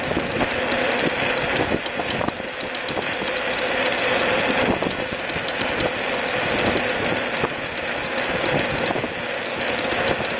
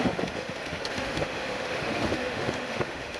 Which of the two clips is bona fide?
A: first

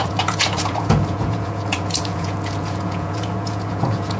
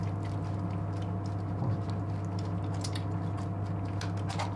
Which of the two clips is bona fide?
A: second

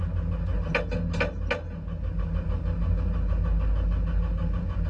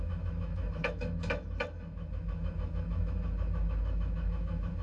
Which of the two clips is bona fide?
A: first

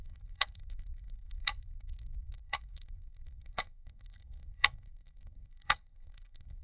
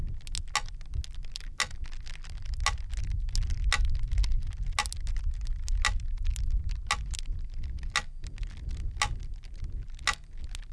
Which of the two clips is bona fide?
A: second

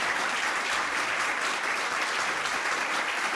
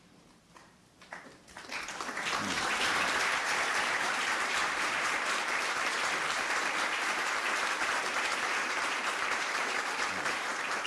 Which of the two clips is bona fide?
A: first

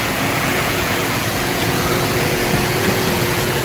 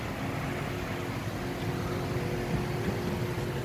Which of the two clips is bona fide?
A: second